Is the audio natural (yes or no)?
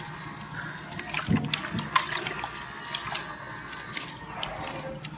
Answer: yes